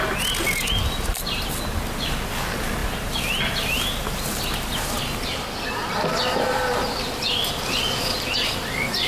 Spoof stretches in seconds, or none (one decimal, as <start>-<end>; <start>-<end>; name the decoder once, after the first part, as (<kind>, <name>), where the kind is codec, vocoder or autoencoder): none